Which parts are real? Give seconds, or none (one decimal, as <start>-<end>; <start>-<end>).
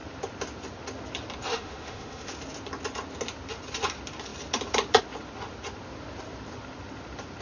0.0-1.5; 2.3-7.4